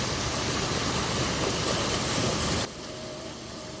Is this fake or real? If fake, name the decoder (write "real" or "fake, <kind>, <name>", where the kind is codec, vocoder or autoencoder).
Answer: real